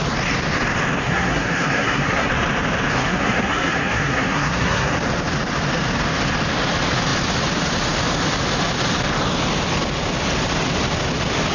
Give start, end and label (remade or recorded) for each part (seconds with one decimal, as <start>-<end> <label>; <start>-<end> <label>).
0.0-1.0 recorded; 1.0-2.3 remade; 2.3-2.9 recorded; 2.9-4.9 remade; 4.9-11.5 recorded